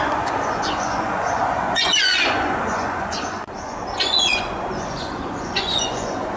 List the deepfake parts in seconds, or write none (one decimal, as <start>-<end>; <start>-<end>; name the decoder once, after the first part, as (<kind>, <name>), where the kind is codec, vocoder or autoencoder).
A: 0.0-6.4 (vocoder, Vocos)